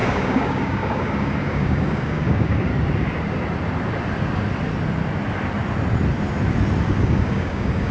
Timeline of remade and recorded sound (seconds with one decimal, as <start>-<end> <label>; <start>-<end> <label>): 0.0-2.7 remade; 2.7-7.0 recorded; 7.0-7.9 remade